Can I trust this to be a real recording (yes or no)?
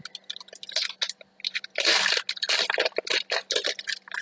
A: yes